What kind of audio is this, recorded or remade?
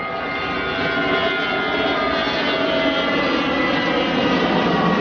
recorded